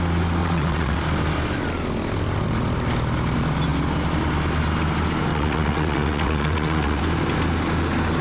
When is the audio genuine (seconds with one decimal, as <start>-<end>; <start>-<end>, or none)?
0.0-0.4; 1.0-5.3; 7.0-8.2